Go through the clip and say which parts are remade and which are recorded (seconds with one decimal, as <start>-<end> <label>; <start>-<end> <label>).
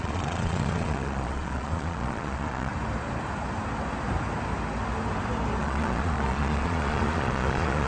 0.0-2.7 remade; 2.7-5.6 recorded; 5.6-7.9 remade